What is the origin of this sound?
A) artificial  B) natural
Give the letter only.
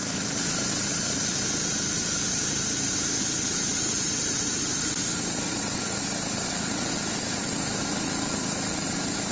B